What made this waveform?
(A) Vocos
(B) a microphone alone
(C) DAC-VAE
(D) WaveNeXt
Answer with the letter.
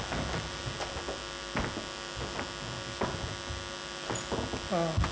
B